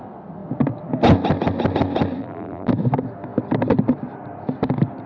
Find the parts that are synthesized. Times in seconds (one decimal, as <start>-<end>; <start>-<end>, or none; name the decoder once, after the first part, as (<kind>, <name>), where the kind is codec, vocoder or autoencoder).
2.2-2.7 (vocoder, BigVGAN v2)